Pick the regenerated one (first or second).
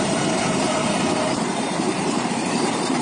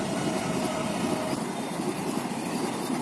first